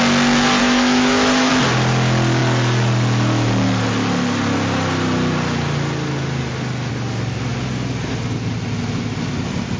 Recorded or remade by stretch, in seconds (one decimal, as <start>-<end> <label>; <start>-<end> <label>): 0.0-0.6 recorded; 0.6-1.5 remade; 1.5-9.8 recorded